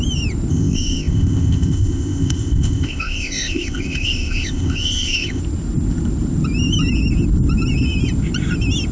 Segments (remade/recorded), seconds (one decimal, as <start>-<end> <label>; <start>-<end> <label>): 0.0-0.5 recorded; 0.5-5.4 remade; 5.4-8.9 recorded